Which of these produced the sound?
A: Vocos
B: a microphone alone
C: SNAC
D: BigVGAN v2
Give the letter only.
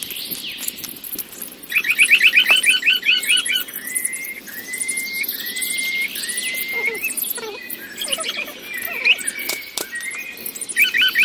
B